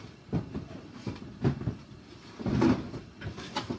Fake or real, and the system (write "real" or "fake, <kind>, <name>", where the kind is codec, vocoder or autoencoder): fake, vocoder, BigVGAN v2